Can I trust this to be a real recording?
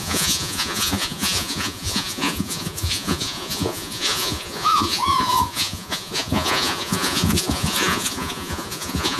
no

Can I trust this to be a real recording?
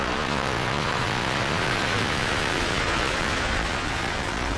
no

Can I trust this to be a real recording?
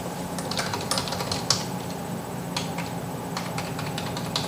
yes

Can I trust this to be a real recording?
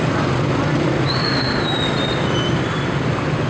yes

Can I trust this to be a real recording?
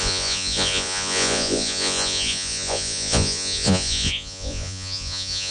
no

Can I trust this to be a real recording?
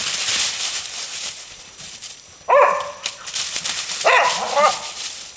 yes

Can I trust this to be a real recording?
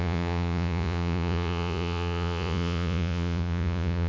no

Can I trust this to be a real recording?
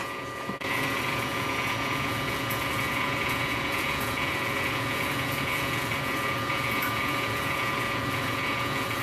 no